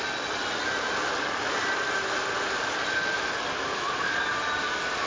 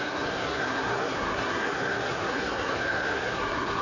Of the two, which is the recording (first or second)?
first